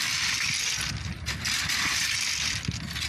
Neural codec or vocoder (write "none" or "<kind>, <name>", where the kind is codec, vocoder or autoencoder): none